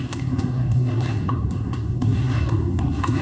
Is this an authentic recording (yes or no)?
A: no